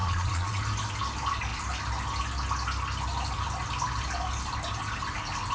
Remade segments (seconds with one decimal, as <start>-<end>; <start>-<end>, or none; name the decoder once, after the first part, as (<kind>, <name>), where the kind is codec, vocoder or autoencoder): 0.0-0.6 (vocoder, Vocos)